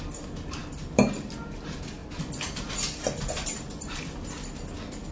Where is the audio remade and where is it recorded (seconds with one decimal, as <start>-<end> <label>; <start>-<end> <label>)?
0.0-0.6 recorded; 0.6-1.3 remade; 1.3-2.0 recorded; 2.0-4.3 remade; 4.3-5.1 recorded